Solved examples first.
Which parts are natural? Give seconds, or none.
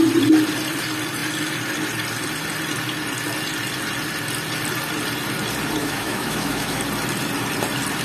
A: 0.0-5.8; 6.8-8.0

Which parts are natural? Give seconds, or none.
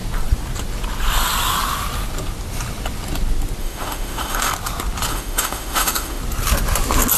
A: 0.0-3.6; 4.5-5.1; 6.2-7.2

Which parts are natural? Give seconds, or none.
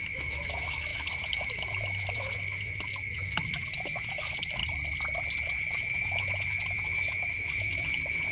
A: 4.6-5.5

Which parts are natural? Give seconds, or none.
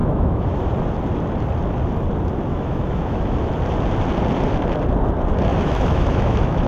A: 0.7-2.5; 3.5-5.5